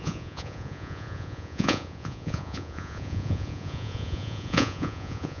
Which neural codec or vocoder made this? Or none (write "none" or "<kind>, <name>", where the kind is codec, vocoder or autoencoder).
vocoder, Vocos